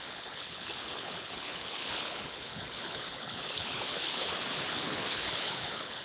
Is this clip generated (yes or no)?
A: yes